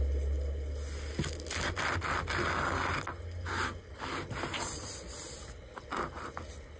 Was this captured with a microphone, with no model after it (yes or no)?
yes